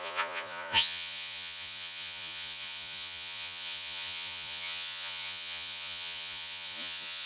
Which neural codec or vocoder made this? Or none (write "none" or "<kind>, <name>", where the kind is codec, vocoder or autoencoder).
vocoder, Vocos